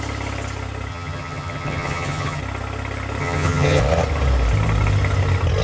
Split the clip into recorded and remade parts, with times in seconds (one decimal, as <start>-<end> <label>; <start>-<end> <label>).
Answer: 0.0-0.9 recorded; 0.9-2.4 remade; 2.4-3.2 recorded; 3.2-3.8 remade; 3.8-5.6 recorded